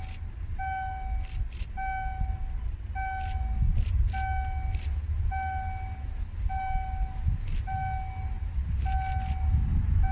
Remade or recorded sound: recorded